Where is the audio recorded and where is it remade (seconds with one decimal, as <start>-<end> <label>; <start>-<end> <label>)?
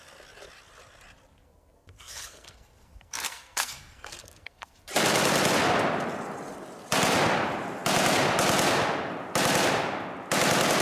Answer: 0.0-1.4 recorded; 1.4-4.9 remade; 4.9-10.8 recorded